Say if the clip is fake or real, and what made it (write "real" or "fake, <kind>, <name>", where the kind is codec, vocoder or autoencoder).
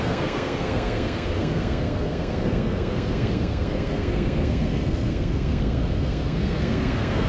fake, codec, SNAC